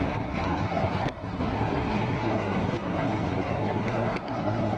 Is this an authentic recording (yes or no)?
no